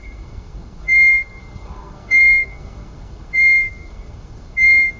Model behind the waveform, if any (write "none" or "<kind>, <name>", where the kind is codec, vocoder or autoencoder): codec, SNAC